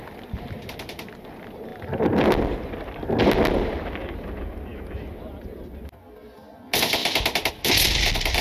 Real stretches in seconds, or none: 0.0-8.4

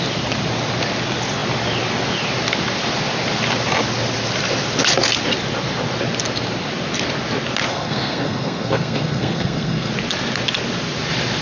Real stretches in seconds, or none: 0.0-7.7; 9.9-11.4

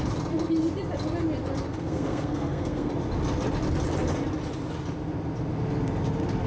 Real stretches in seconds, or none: 0.0-1.7; 2.9-6.5

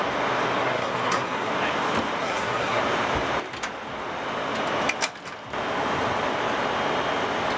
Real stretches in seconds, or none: 0.0-0.6; 1.5-2.2; 2.8-7.6

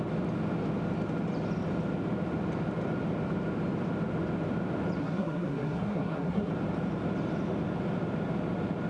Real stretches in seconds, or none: 0.0-5.0; 6.5-8.9

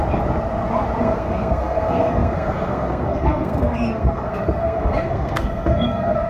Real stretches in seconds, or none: 0.0-1.0

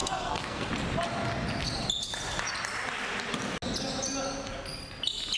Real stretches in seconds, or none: 0.7-5.4

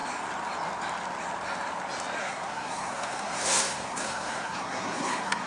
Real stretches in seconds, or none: 0.0-2.2